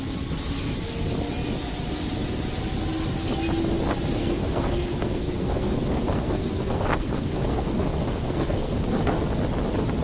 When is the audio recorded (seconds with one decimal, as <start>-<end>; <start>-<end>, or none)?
0.0-4.2; 9.2-10.0